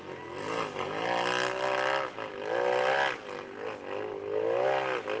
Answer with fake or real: real